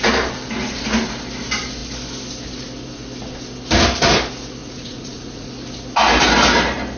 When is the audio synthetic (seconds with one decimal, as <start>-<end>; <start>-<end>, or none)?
4.6-5.5